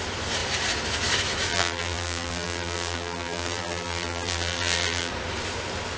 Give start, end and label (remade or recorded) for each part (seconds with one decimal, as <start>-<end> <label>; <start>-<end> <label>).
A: 0.0-1.5 recorded; 1.5-5.1 remade; 5.1-6.0 recorded